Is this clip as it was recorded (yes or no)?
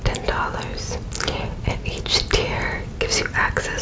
yes